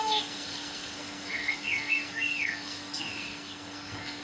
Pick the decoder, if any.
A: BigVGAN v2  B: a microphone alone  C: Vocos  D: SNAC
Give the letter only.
D